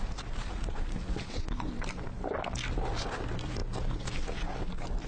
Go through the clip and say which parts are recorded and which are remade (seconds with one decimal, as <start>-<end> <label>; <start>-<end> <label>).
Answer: 0.0-5.1 recorded